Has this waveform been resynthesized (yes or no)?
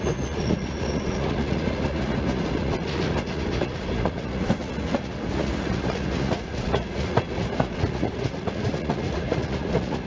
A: yes